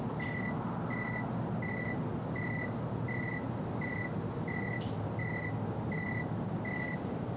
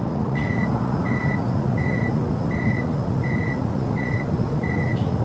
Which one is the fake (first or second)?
second